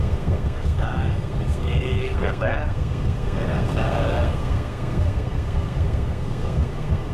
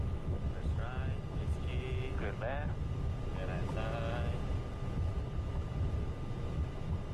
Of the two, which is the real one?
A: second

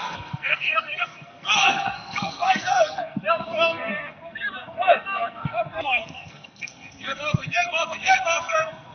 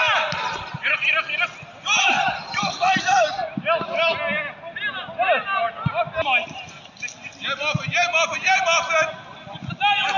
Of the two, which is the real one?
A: second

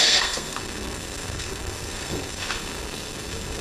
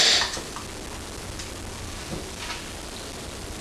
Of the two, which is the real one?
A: second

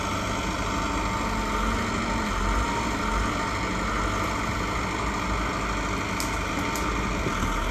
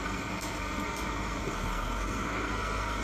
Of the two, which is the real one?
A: first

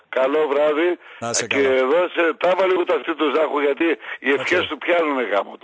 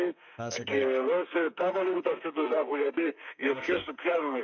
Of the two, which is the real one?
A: first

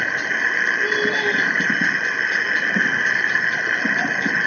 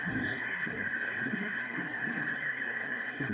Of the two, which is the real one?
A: first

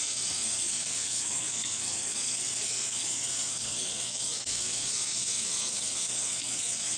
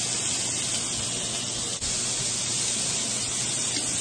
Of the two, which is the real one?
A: second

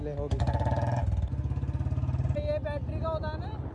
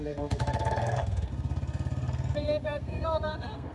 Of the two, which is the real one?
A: first